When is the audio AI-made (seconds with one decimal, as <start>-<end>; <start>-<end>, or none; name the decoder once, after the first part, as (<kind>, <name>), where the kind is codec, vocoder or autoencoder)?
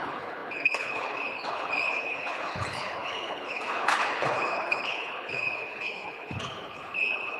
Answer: 0.0-7.4 (codec, HILCodec)